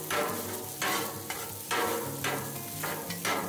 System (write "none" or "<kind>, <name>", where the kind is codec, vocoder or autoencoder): none